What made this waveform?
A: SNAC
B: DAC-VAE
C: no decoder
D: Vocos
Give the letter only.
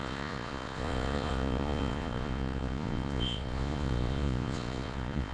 D